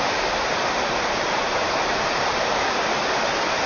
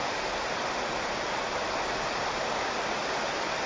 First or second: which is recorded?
second